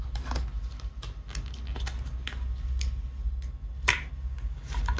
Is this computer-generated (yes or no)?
no